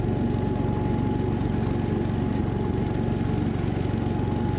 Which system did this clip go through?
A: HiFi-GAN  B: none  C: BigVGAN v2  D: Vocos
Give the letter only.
B